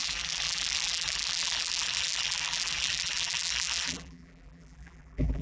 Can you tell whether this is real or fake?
fake